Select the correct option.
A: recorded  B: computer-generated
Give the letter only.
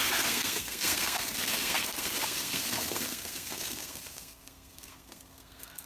B